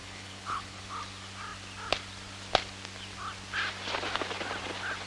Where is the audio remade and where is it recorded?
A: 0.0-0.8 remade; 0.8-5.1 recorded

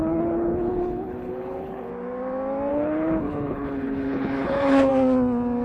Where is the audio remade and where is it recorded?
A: 0.0-1.9 remade; 1.9-2.7 recorded; 2.7-4.9 remade; 4.9-5.6 recorded

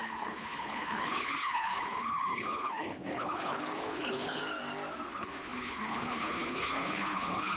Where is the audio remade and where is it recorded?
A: 0.0-4.4 remade; 4.4-5.1 recorded; 5.1-7.6 remade

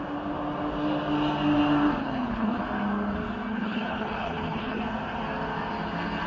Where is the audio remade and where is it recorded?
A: 0.0-2.0 recorded; 2.0-2.6 remade; 2.6-3.5 recorded; 3.5-4.8 remade; 4.8-6.3 recorded

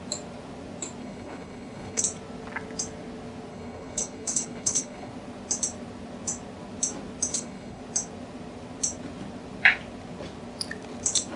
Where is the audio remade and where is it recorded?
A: 0.0-1.0 recorded; 1.0-2.0 remade; 2.0-3.5 recorded; 3.5-5.1 remade; 5.1-7.3 recorded; 7.3-7.8 remade; 7.8-11.4 recorded

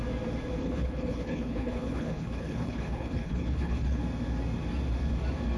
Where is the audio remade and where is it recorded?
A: 0.0-0.6 recorded; 0.6-4.0 remade; 4.0-5.6 recorded

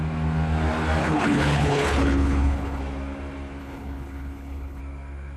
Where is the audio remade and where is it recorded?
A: 0.0-1.0 recorded; 1.0-2.8 remade; 2.8-3.6 recorded; 3.6-4.8 remade; 4.8-5.4 recorded

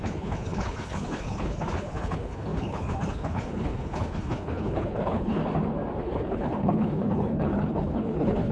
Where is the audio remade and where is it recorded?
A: 0.0-5.4 remade; 5.4-6.0 recorded; 6.0-8.5 remade